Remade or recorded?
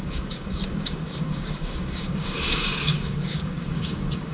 remade